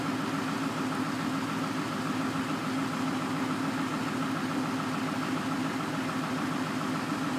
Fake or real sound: real